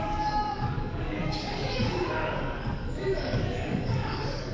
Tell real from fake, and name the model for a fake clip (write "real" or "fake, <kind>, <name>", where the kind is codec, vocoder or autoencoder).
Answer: fake, codec, DAC